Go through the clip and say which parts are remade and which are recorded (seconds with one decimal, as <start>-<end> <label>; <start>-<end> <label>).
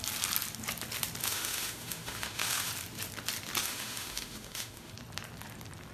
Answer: 0.0-1.2 recorded; 1.2-2.7 remade; 2.7-3.6 recorded; 3.6-4.9 remade; 4.9-5.9 recorded